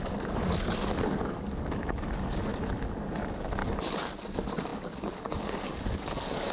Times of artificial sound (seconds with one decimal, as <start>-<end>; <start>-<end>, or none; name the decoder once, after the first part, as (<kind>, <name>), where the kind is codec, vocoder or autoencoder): 0.0-2.5 (codec, DAC); 3.1-3.6; 4.1-6.5